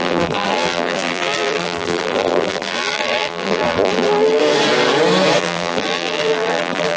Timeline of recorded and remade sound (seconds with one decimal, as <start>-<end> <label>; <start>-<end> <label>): 0.0-4.4 remade; 4.4-5.4 recorded; 5.4-7.0 remade

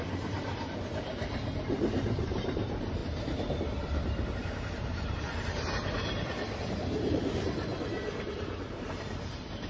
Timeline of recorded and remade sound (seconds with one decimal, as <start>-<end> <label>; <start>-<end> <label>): 0.0-7.7 remade; 7.7-8.3 recorded; 8.3-9.7 remade

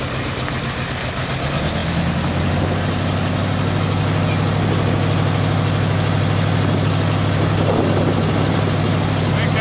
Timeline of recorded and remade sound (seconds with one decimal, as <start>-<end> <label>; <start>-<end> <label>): 0.0-9.6 recorded

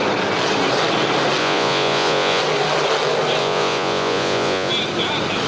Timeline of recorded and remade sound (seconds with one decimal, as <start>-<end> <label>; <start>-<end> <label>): 0.0-1.4 recorded; 1.4-2.4 remade; 2.4-3.4 recorded; 3.4-4.7 remade; 4.7-5.5 recorded